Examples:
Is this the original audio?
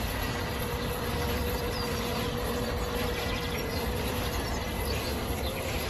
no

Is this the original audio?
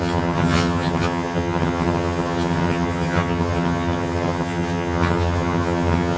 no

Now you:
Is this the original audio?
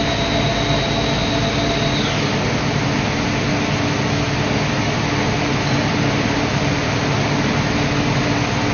yes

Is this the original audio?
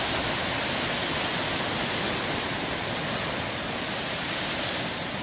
yes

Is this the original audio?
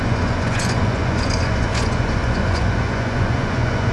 no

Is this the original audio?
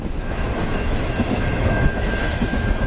no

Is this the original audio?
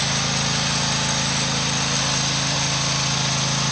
yes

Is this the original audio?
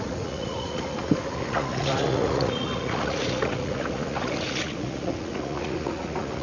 no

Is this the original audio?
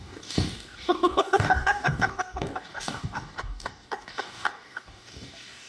no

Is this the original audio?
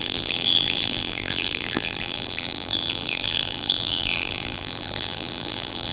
no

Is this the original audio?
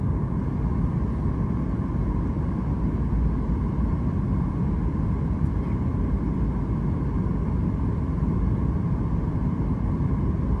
yes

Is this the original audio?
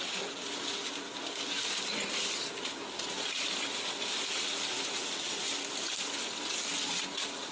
yes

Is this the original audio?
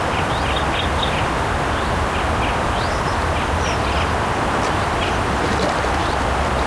yes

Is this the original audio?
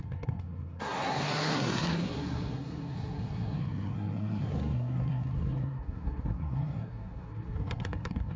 no